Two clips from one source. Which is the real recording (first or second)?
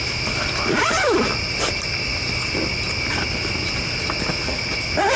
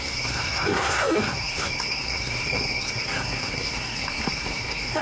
first